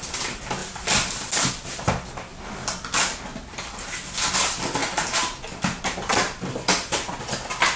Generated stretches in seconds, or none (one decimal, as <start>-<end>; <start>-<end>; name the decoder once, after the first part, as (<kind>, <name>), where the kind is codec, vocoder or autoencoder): 0.6-1.5 (vocoder, BigVGAN v2); 2.3-3.0; 4.8-6.2